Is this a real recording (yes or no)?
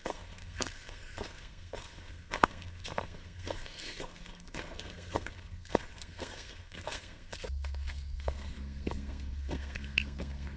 no